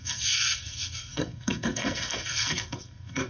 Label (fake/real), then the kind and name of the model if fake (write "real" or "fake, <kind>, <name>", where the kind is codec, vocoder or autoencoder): fake, codec, SNAC